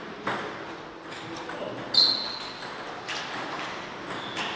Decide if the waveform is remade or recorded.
recorded